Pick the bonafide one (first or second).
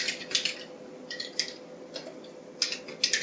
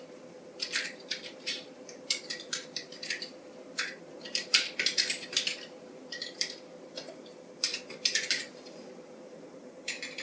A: first